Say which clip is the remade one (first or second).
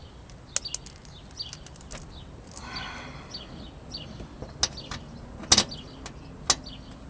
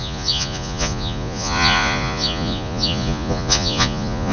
second